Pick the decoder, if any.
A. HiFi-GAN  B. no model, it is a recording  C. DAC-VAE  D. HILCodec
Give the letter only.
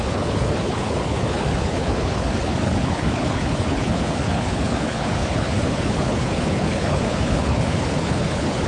D